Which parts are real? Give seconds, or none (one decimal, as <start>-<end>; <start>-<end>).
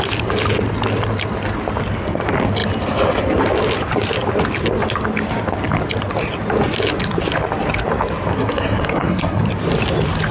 0.0-8.3; 9.4-10.3